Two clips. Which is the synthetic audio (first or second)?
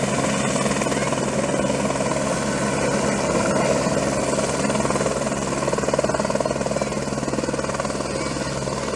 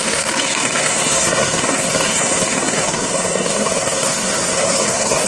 second